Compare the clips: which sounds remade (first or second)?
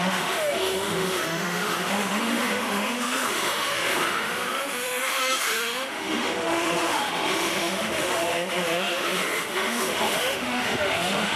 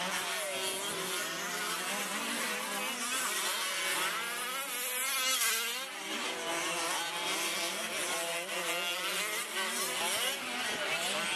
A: first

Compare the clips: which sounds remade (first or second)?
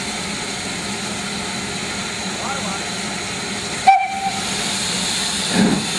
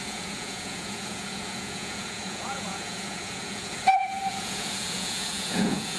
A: second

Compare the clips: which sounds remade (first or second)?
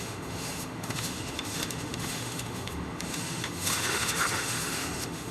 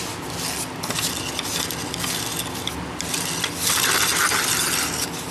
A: first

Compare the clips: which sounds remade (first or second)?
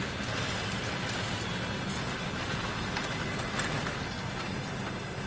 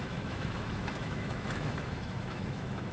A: second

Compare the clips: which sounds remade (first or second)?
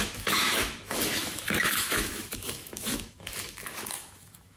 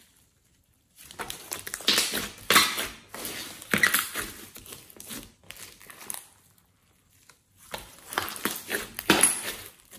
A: first